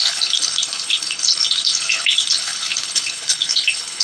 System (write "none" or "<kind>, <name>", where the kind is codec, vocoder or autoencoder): codec, HILCodec